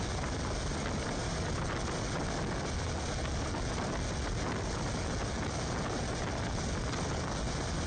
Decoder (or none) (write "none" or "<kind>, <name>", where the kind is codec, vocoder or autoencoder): none